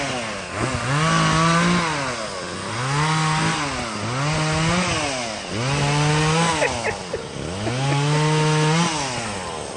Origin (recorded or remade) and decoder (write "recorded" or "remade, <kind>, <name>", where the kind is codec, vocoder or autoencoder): recorded